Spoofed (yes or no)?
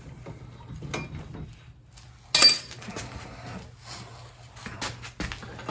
no